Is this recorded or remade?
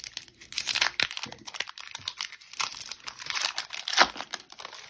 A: recorded